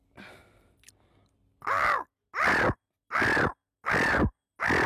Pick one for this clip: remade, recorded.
recorded